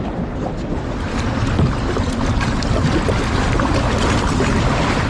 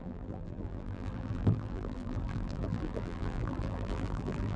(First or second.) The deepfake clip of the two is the second